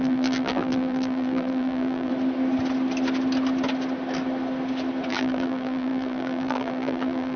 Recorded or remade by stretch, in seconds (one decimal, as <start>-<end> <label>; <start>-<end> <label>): 0.0-2.1 remade; 2.1-5.1 recorded; 5.1-7.4 remade